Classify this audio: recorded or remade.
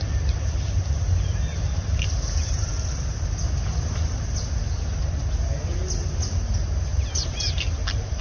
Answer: recorded